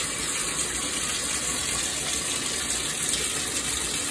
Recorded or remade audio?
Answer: recorded